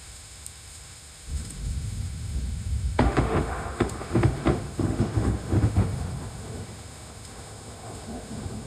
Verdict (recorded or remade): remade